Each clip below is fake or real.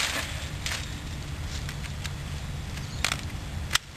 real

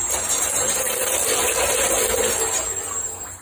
real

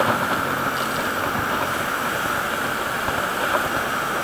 real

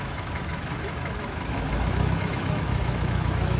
fake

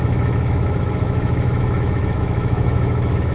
fake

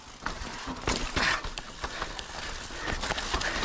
real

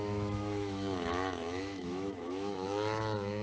fake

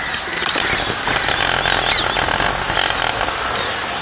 real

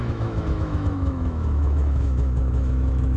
fake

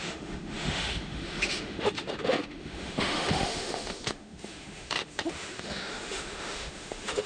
fake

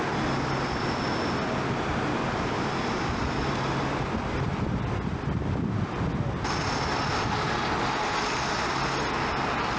real